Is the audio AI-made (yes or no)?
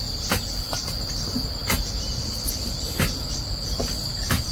no